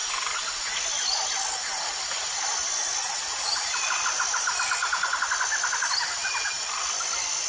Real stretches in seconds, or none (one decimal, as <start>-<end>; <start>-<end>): 0.0-7.5